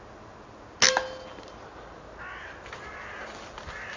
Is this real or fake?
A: real